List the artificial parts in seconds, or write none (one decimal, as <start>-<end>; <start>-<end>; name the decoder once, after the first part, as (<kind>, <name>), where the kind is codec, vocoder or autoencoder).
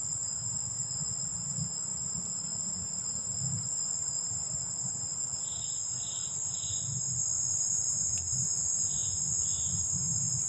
none